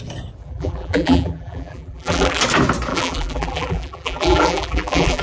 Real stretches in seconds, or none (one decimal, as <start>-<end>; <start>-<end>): 0.0-0.4; 2.4-2.9